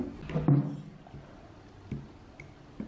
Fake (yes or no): no